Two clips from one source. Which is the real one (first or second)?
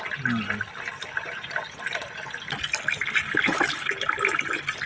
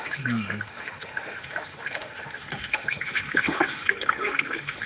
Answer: first